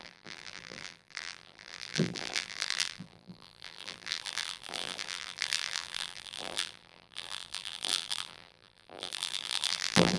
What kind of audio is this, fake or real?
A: fake